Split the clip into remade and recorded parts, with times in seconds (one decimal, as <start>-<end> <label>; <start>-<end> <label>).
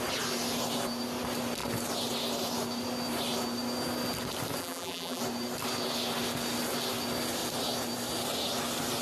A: 0.0-4.6 recorded; 4.6-5.2 remade; 5.2-9.0 recorded